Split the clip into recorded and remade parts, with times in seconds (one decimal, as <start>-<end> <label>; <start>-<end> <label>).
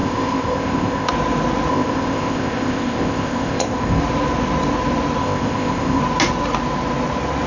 0.0-1.1 remade; 1.1-1.7 recorded; 1.7-4.0 remade; 4.0-5.2 recorded; 5.2-6.0 remade; 6.0-7.5 recorded